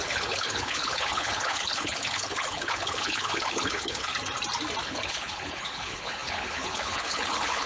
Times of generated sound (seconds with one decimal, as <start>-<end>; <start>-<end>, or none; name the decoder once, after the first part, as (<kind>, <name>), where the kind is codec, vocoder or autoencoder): 0.0-4.1 (codec, HILCodec); 4.8-7.7